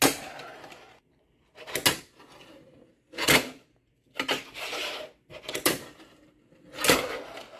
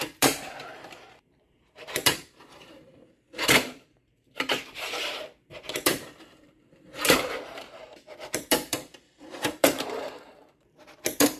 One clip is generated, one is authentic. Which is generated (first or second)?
second